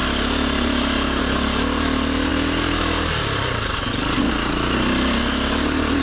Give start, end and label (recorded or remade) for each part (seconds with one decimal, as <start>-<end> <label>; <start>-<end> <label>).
0.0-6.0 recorded